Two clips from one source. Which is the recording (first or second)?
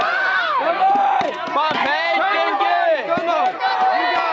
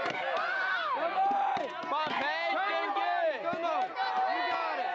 second